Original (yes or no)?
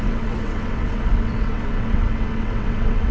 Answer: no